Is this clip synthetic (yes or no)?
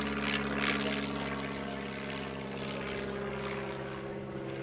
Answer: no